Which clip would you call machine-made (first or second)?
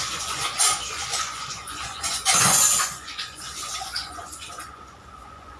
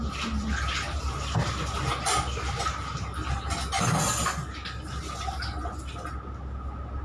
first